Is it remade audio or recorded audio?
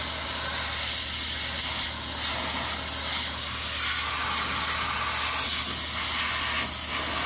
recorded